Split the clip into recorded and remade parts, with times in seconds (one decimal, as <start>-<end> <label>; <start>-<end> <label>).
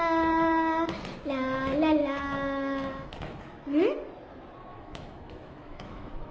0.0-2.0 recorded; 2.0-3.4 remade; 3.4-4.7 recorded; 4.7-6.3 remade